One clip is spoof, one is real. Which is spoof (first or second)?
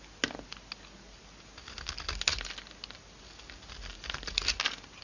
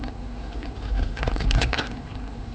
second